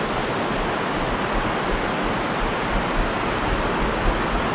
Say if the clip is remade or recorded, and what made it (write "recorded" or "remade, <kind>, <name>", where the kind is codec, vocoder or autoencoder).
recorded